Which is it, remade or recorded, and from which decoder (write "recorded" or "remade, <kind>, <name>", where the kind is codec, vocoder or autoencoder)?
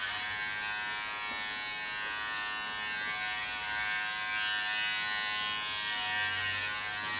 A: recorded